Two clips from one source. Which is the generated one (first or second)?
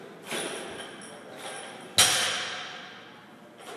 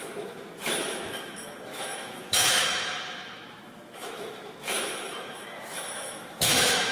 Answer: second